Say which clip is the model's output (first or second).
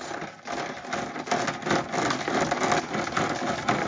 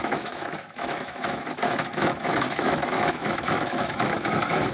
second